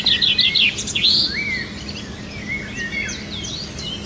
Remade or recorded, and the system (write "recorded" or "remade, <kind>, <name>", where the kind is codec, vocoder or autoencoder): recorded